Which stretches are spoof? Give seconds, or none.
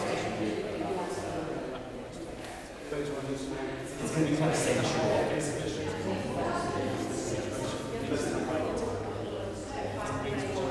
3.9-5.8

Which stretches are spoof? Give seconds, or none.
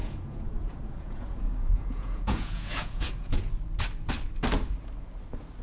0.0-3.4